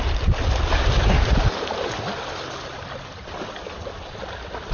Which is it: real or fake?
real